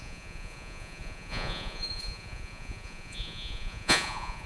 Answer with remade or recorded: remade